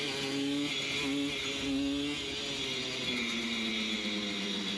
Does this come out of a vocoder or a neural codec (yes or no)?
no